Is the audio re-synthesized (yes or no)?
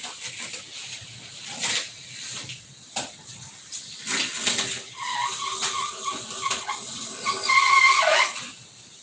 no